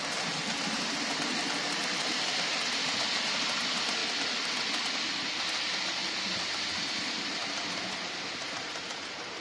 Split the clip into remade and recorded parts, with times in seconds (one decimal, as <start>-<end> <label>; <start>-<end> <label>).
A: 0.0-4.0 remade; 4.0-5.4 recorded; 5.4-6.0 remade; 6.0-6.8 recorded; 6.8-7.4 remade; 7.4-8.6 recorded; 8.6-9.4 remade

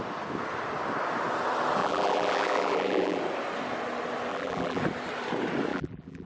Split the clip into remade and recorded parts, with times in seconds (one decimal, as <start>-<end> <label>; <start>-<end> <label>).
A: 0.0-1.8 recorded; 1.8-3.2 remade; 3.2-4.3 recorded; 4.3-4.8 remade; 4.8-5.7 recorded; 5.7-6.3 remade